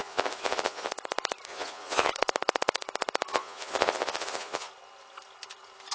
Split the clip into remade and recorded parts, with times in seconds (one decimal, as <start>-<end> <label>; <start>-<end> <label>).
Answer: 0.0-0.9 remade; 0.9-1.5 recorded; 1.5-2.1 remade; 2.1-3.3 recorded; 3.3-4.7 remade; 4.7-5.9 recorded